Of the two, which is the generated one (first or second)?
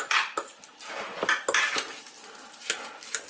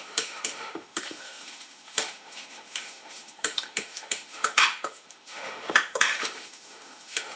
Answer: second